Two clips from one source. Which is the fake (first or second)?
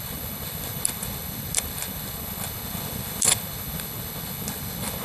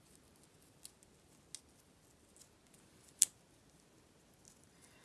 first